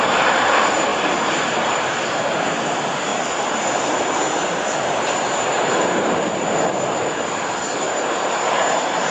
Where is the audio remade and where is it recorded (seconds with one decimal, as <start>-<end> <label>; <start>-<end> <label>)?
0.0-3.1 remade; 3.1-4.6 recorded; 4.6-9.1 remade

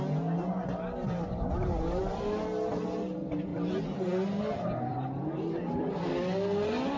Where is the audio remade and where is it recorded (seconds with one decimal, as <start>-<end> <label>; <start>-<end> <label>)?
0.0-1.0 recorded; 1.0-2.0 remade; 2.0-4.9 recorded; 4.9-6.1 remade; 6.1-7.0 recorded

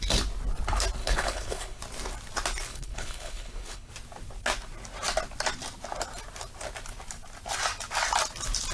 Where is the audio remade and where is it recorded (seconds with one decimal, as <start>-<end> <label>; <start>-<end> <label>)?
0.0-1.0 recorded; 1.0-1.8 remade; 1.8-2.7 recorded; 2.7-3.9 remade; 3.9-8.7 recorded